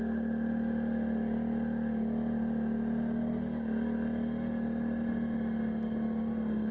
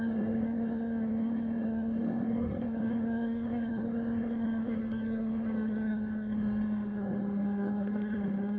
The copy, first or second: second